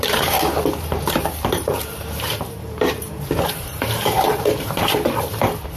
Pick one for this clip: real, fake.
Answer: fake